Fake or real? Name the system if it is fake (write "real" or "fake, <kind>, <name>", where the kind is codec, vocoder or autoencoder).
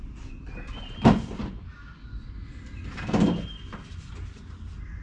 real